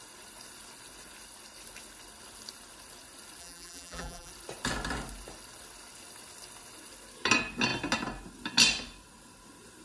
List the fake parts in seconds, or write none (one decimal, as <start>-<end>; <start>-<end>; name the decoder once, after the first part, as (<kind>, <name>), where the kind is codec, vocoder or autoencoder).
3.4-4.3 (vocoder, BigVGAN v2)